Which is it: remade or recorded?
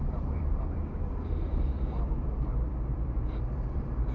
remade